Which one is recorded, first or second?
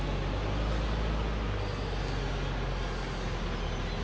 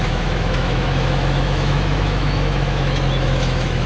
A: first